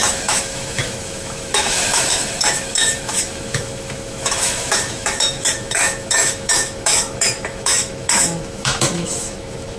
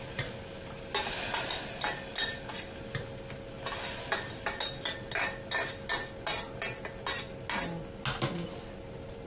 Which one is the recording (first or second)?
second